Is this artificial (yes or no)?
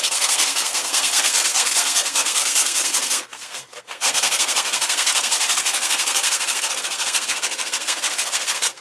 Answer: yes